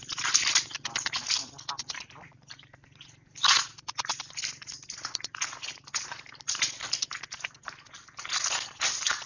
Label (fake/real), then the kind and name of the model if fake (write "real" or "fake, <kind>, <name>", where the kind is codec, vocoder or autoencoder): real